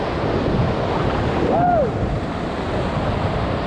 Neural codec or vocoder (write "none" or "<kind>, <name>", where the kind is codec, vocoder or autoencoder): none